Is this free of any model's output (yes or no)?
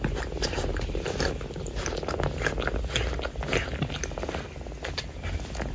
yes